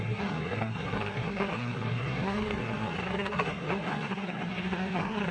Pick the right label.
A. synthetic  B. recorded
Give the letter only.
A